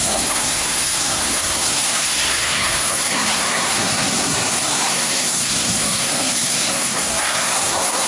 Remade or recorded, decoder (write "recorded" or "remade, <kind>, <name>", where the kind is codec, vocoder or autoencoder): remade, codec, SNAC